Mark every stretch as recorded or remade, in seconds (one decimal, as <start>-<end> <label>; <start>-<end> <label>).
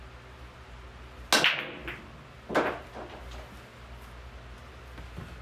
0.0-5.4 recorded